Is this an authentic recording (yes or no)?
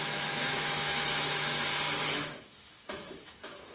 no